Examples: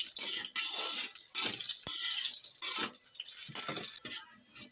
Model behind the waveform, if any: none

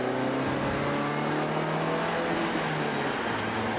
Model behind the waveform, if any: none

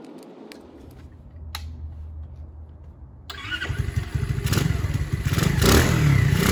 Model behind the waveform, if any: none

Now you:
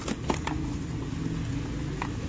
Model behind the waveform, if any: none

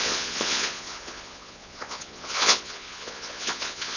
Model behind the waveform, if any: vocoder, Vocos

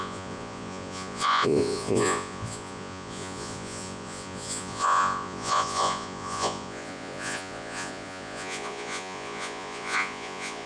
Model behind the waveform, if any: vocoder, Vocos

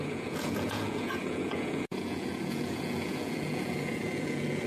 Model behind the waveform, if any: vocoder, Vocos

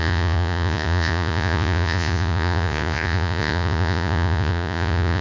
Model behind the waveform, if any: vocoder, Vocos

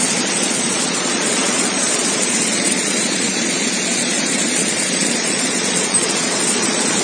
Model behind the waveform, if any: vocoder, Vocos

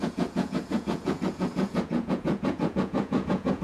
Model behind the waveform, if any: vocoder, Vocos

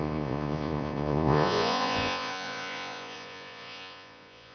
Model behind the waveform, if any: vocoder, Vocos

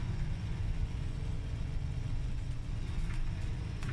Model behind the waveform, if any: vocoder, Vocos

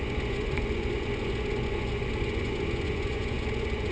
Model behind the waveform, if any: vocoder, Vocos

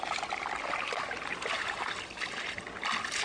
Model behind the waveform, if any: none